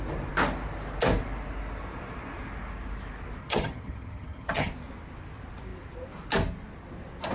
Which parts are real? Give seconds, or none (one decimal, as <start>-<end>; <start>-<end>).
0.0-3.4; 4.7-7.3